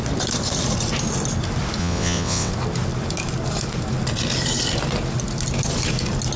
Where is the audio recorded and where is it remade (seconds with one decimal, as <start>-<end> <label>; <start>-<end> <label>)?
0.0-1.8 recorded; 1.8-2.5 remade; 2.5-6.4 recorded